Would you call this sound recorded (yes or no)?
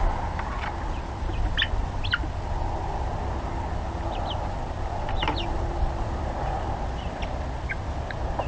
yes